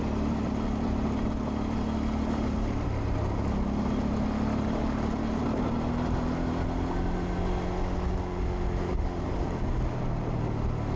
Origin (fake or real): real